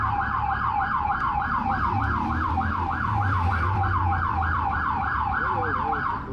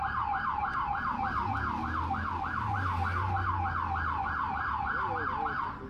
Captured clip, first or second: second